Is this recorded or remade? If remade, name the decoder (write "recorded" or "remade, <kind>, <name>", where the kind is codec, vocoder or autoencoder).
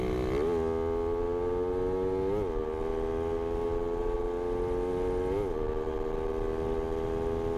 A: recorded